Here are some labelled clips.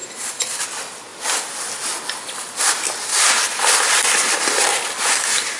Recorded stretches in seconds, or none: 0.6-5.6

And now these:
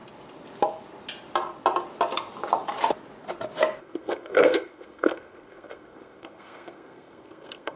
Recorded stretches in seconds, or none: 0.0-3.8